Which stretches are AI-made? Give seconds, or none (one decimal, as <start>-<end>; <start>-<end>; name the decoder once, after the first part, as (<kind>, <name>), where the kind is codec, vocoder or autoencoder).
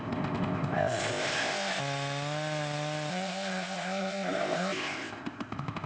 0.0-1.8 (codec, ZipCodec); 3.1-5.9